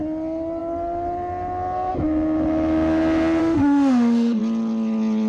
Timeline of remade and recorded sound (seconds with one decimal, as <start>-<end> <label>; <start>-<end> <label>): 0.0-3.4 recorded; 3.4-4.4 remade; 4.4-5.3 recorded